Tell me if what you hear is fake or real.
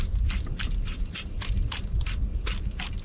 real